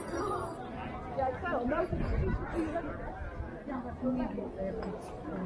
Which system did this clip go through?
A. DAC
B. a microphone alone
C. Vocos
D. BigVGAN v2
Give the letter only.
B